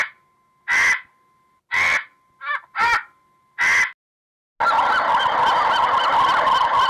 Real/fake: real